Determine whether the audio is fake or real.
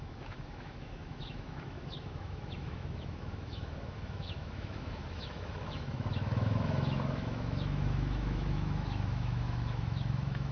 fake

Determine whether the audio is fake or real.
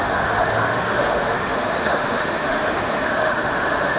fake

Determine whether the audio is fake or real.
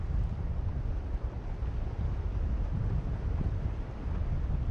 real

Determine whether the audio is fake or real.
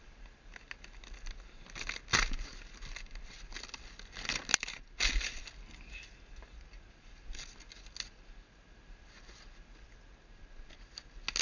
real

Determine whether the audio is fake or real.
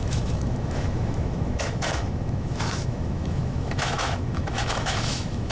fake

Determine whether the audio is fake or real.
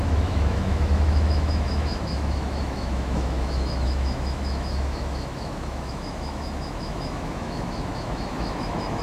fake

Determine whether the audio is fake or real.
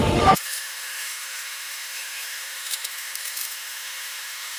fake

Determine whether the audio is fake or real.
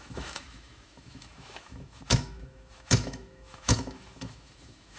fake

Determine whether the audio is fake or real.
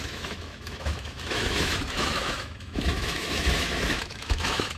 fake